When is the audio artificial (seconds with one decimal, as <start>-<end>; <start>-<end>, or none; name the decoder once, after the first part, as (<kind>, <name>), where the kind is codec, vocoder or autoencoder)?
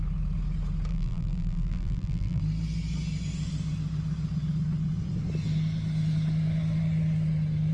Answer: 0.9-2.4 (vocoder, BigVGAN v2)